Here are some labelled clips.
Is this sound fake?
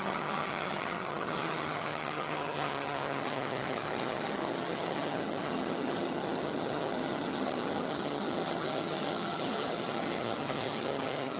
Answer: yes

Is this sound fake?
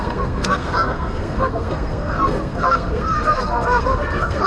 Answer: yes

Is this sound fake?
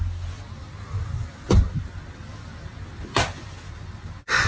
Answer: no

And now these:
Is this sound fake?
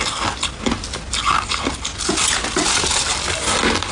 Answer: no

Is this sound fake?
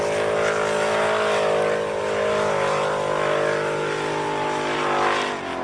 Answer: no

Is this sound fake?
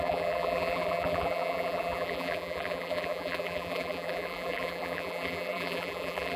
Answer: yes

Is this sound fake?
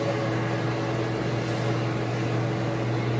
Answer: no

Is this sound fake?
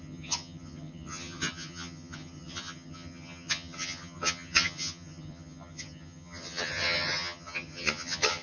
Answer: yes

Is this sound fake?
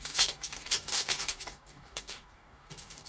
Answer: yes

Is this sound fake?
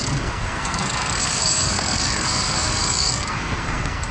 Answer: yes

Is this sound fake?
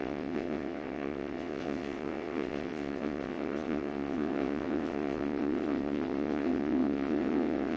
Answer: yes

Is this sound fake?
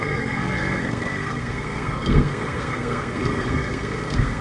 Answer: yes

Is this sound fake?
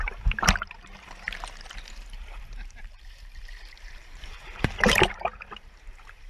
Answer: yes